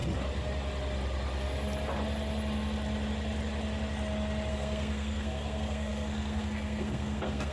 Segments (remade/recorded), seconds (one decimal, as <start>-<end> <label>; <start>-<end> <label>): 0.0-4.5 recorded; 4.5-7.5 remade